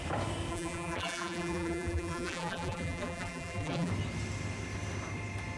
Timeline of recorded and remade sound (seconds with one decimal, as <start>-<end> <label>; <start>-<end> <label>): 0.0-0.5 recorded; 0.5-3.9 remade; 3.9-5.6 recorded